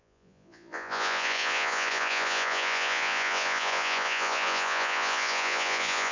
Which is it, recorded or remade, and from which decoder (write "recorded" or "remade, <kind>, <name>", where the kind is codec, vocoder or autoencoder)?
remade, vocoder, Vocos